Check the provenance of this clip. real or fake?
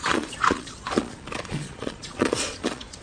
fake